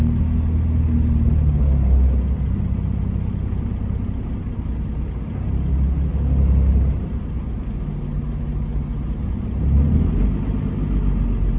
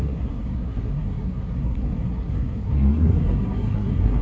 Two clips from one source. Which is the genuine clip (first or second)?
first